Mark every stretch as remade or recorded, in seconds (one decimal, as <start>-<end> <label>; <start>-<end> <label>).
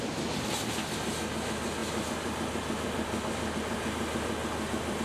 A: 0.0-1.8 recorded; 1.8-5.0 remade